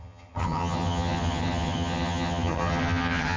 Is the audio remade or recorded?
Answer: remade